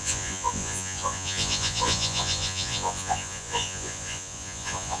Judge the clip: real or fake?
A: fake